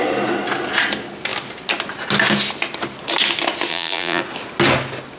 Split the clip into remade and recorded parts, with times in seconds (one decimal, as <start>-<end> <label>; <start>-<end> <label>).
0.0-3.7 recorded; 3.7-4.2 remade; 4.2-5.2 recorded